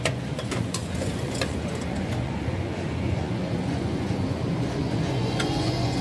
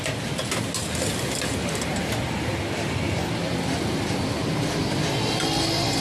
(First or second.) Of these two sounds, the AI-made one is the first